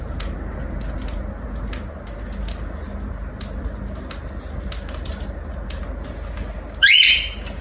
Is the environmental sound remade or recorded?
recorded